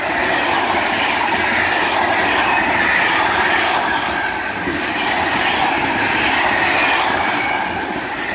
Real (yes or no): yes